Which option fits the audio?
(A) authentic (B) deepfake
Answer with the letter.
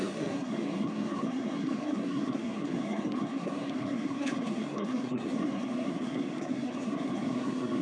B